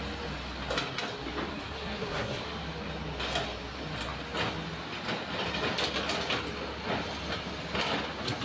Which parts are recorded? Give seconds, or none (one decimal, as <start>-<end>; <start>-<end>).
0.0-1.5; 2.4-8.4